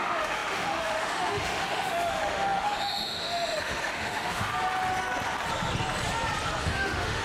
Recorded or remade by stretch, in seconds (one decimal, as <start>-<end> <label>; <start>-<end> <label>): 0.0-4.5 remade; 4.5-6.6 recorded; 6.6-7.2 remade